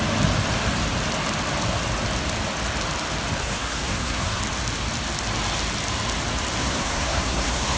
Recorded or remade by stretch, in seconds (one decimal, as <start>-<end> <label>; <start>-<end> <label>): 0.0-3.4 recorded; 3.4-4.4 remade; 4.4-6.6 recorded; 6.6-7.8 remade